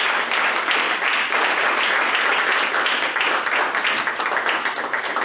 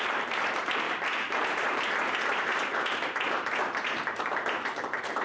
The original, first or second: first